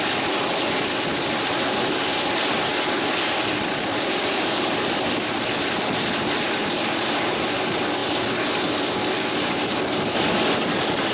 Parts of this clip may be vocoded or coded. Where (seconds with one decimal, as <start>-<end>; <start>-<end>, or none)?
0.0-8.0; 8.6-11.1